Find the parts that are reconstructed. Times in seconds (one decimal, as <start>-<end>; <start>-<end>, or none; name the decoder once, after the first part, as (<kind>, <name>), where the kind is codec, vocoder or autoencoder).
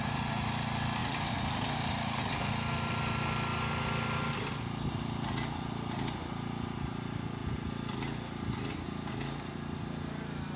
none